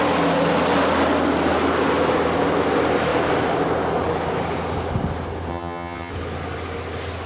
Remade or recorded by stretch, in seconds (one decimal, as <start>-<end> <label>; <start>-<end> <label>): 0.0-5.5 recorded; 5.5-6.1 remade; 6.1-7.3 recorded